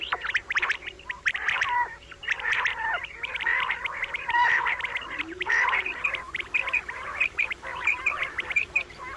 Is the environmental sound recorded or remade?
remade